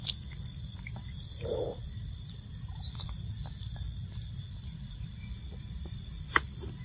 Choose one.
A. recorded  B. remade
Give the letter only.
B